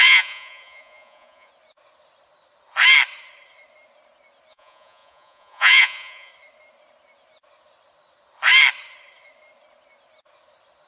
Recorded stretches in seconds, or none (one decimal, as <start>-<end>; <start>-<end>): 1.5-4.5; 6.3-10.9